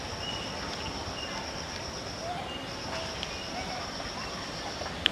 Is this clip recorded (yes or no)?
yes